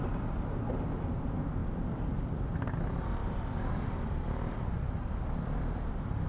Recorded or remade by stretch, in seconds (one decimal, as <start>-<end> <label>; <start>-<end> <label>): 0.0-1.6 recorded; 1.6-2.7 remade; 2.7-3.2 recorded; 3.2-6.3 remade